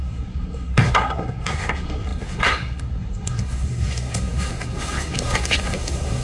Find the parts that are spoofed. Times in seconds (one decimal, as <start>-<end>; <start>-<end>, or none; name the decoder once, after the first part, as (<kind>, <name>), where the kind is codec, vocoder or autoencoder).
0.0-6.2 (codec, SNAC)